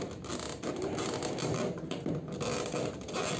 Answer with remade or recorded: recorded